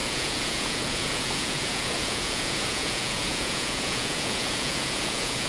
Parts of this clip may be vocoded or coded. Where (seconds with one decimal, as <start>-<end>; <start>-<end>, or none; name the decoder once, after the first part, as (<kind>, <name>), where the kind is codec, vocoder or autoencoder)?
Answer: 0.0-5.5 (vocoder, Vocos)